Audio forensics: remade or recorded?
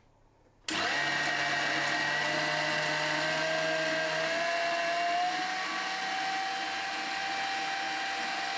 recorded